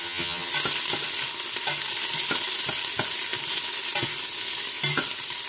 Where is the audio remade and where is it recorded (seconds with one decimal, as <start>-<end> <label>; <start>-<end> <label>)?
0.0-0.5 remade; 0.5-5.5 recorded